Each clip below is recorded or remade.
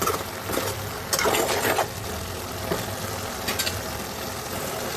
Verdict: recorded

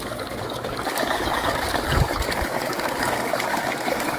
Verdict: remade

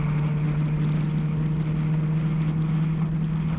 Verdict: recorded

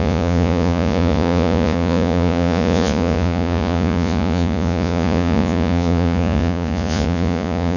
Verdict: remade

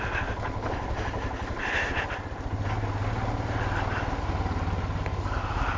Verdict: recorded